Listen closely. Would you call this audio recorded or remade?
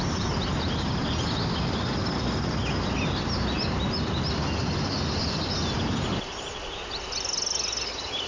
recorded